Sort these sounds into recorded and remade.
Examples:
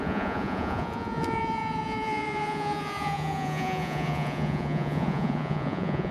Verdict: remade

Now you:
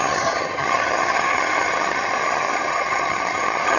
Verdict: remade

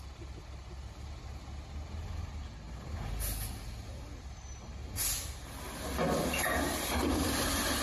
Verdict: recorded